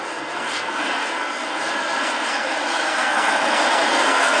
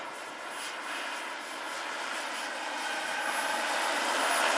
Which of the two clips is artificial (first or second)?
first